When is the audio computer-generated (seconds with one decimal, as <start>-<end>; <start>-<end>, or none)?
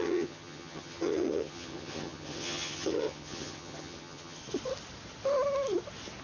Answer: 0.0-4.4